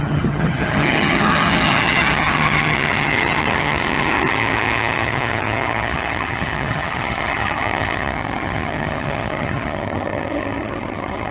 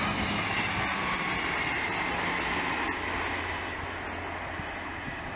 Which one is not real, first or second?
first